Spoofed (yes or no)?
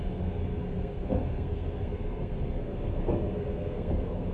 yes